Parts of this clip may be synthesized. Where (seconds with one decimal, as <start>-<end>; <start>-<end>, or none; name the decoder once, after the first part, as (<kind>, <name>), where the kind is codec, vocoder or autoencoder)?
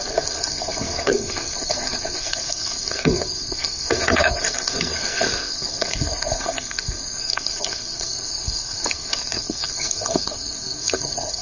0.0-11.4 (codec, SNAC)